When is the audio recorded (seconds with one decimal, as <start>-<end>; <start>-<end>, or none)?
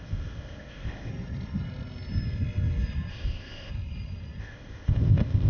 1.1-3.1; 3.7-4.4